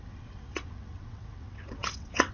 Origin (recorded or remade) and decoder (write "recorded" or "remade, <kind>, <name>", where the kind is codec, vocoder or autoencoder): remade, vocoder, WaveNeXt